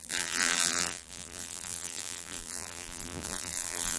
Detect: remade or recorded remade